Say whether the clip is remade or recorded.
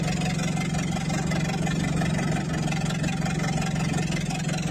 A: recorded